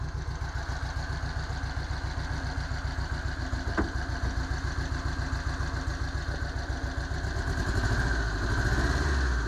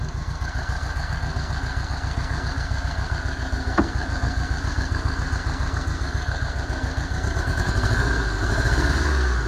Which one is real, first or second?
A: first